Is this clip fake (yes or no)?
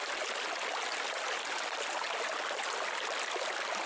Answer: no